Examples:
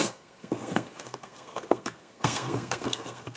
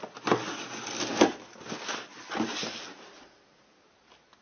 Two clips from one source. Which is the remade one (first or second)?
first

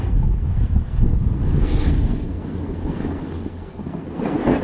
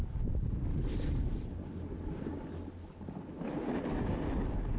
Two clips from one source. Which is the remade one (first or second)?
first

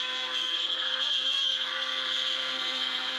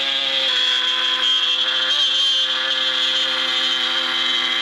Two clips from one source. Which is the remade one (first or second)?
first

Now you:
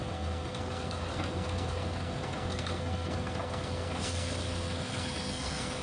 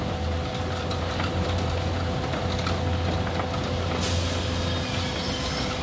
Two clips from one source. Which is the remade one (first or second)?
first